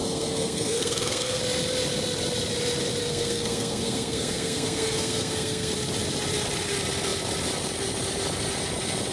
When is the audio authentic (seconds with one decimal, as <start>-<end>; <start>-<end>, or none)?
1.4-3.0; 5.7-9.1

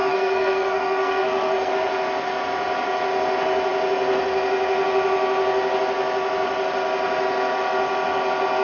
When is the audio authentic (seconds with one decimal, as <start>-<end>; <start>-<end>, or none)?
1.7-8.6

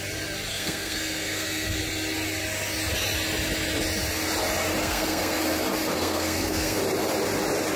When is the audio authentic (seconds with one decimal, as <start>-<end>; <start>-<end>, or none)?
0.0-0.5; 1.8-4.8; 5.4-5.9; 6.8-7.8

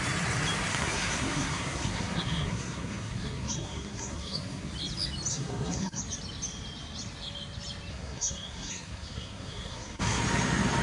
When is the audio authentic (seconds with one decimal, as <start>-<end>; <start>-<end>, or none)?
0.0-0.7; 4.7-5.3; 6.0-7.9; 10.2-10.8

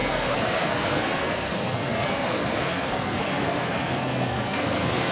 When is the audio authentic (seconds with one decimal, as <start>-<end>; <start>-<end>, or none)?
none

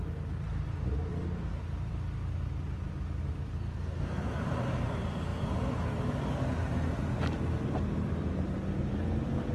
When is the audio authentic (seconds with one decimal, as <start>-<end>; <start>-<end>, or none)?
0.0-1.1; 1.6-3.5; 4.4-9.5

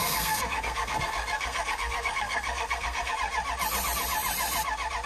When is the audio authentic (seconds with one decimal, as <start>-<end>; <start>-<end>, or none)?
3.1-5.1